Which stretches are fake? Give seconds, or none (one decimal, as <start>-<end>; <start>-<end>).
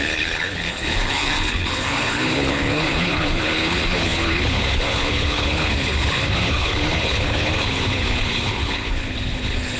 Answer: 0.0-9.8